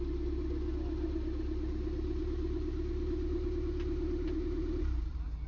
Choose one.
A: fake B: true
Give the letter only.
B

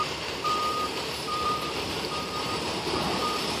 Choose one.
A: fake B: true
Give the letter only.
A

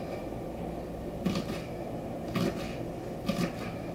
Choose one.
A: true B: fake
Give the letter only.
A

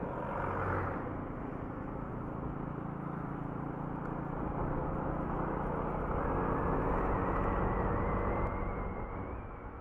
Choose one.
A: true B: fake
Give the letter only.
A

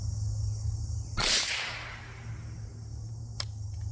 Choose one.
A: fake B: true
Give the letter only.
B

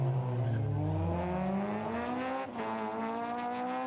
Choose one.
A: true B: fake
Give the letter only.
A